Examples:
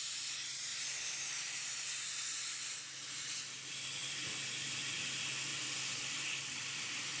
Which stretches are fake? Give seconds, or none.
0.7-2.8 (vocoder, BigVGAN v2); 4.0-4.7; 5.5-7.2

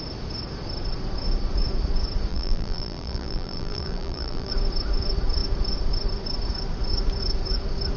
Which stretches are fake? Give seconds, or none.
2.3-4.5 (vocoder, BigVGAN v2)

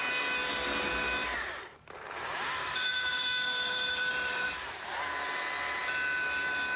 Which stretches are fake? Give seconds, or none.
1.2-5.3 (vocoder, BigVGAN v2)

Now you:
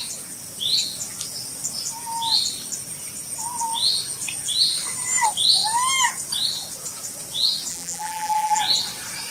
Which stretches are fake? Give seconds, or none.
7.7-8.6 (vocoder, BigVGAN v2)